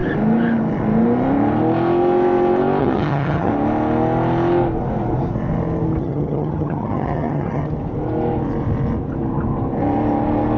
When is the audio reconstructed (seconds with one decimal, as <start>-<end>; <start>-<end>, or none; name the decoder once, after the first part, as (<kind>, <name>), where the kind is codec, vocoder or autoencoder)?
2.8-3.5 (vocoder, HiFi-GAN); 6.0-7.6